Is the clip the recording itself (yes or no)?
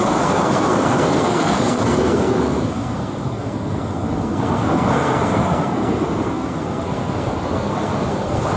no